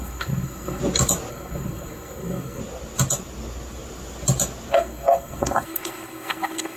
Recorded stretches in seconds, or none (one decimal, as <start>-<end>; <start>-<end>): 0.8-1.3; 2.6-4.7